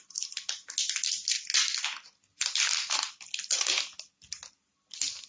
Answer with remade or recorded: recorded